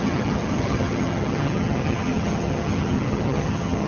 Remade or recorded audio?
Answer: remade